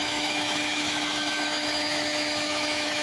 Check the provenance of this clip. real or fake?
fake